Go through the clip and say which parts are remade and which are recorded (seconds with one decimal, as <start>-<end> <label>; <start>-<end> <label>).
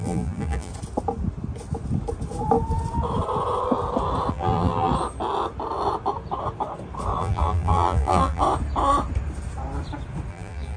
0.0-0.7 remade; 0.7-4.3 recorded; 4.3-4.9 remade; 4.9-7.2 recorded; 7.2-8.4 remade; 8.4-10.3 recorded; 10.3-10.8 remade